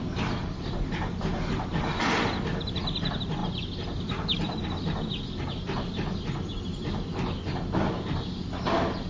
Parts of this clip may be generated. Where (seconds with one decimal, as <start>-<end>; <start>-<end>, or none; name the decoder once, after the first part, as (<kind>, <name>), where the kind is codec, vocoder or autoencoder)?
none